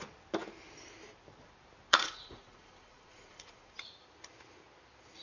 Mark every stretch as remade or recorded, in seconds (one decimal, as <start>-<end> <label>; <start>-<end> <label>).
0.0-1.9 recorded; 1.9-3.7 remade; 3.7-5.2 recorded